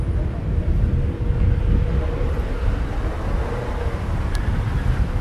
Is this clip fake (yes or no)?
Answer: no